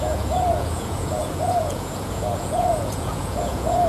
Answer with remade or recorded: remade